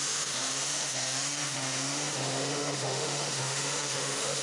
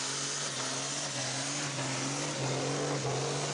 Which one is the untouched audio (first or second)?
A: second